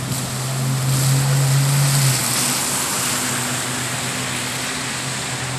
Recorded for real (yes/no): yes